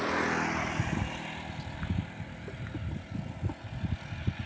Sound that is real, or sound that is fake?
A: real